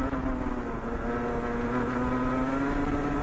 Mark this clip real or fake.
real